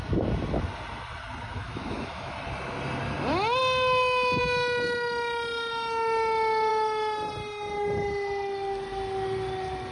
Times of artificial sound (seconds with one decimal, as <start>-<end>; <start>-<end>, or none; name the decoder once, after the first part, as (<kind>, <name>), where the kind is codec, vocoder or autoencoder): 1.5-2.3 (autoencoder, DAC-VAE)